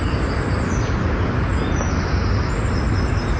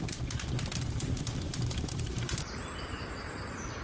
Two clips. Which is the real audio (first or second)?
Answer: first